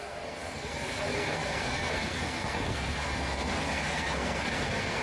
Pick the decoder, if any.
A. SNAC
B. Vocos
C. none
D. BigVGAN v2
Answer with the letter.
A